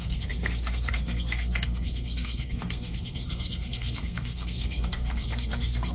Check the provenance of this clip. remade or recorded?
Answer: remade